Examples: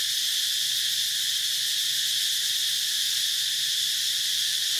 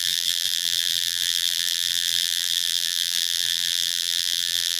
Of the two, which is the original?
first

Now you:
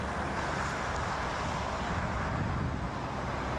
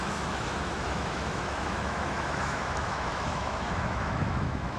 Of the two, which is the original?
first